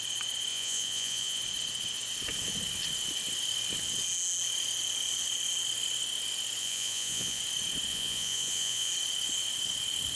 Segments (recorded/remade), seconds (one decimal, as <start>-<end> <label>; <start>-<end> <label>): 0.0-0.5 recorded; 0.5-1.4 remade; 1.4-6.6 recorded; 6.6-7.4 remade; 7.4-7.9 recorded; 7.9-8.9 remade; 8.9-10.2 recorded